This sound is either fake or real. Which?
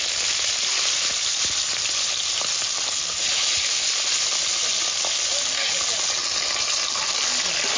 real